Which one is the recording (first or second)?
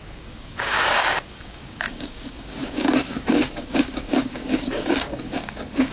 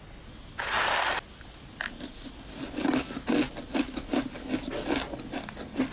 second